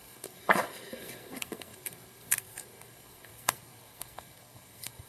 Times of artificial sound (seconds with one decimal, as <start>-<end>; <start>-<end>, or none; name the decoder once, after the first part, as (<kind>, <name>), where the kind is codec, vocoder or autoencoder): 0.0-5.1 (codec, SNAC)